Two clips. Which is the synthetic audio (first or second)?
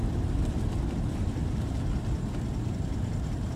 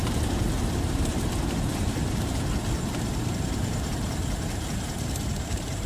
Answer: second